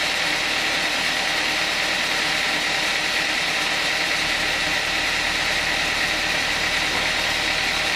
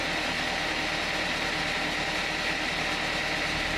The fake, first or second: first